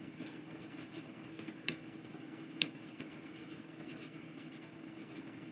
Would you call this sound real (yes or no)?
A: no